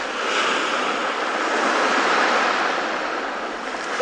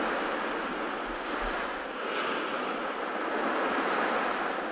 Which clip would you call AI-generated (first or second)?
first